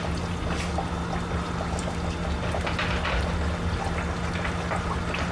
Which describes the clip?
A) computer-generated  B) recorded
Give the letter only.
B